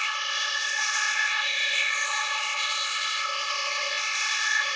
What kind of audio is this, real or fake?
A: fake